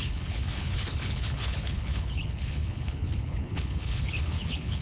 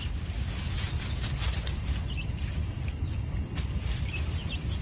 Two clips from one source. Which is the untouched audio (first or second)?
second